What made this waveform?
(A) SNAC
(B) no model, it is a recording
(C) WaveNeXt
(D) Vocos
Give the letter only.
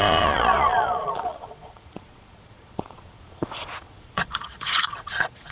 D